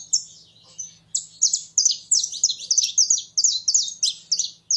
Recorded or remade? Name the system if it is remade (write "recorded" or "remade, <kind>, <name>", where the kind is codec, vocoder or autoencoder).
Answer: recorded